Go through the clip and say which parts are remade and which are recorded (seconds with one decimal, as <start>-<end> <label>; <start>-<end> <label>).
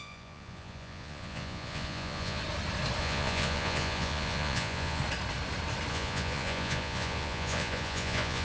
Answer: 0.0-2.4 remade; 2.4-3.0 recorded; 3.0-5.0 remade; 5.0-5.9 recorded; 5.9-8.4 remade